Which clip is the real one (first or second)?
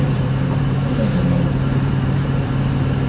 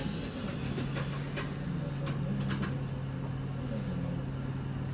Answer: second